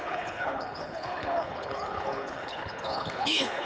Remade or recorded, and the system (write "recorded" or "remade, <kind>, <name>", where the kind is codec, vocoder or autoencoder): remade, codec, HILCodec